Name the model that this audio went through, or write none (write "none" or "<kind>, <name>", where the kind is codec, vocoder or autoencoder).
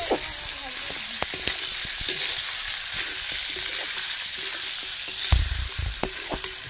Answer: none